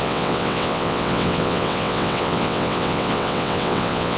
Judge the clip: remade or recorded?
remade